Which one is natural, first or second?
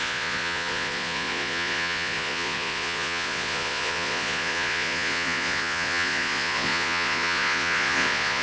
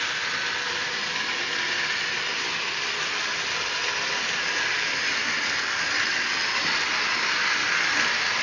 second